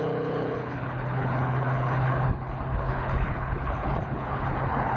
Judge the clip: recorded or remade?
remade